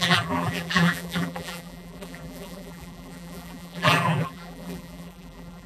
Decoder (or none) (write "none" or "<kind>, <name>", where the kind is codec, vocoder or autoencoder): vocoder, BigVGAN v2